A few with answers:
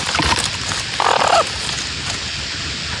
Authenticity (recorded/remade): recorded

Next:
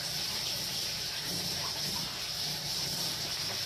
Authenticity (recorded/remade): remade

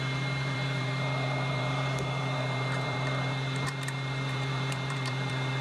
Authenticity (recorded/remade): remade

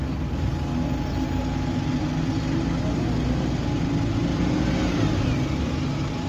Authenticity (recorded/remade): recorded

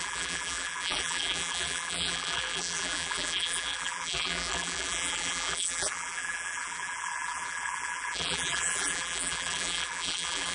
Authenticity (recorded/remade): remade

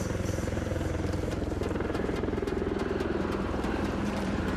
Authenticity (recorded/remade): remade